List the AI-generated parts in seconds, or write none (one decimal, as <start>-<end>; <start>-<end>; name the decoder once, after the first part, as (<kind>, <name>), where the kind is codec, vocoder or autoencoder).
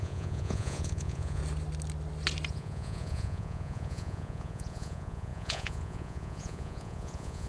0.0-1.4 (vocoder, Vocos); 2.5-7.5